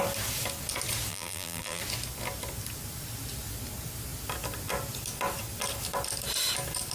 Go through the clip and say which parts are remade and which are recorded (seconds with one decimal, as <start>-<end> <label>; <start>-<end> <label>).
0.0-1.1 recorded; 1.1-1.8 remade; 1.8-6.9 recorded